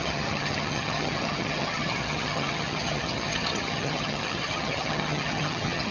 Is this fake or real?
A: fake